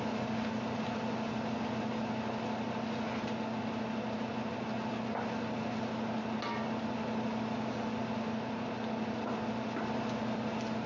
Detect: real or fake real